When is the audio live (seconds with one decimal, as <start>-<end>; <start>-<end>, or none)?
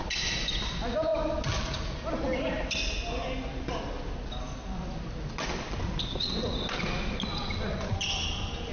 0.0-8.7